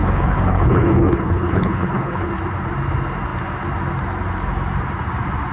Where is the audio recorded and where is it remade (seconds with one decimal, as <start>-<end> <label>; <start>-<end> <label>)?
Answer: 0.0-2.3 remade; 2.3-5.5 recorded